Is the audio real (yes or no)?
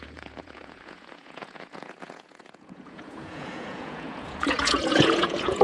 no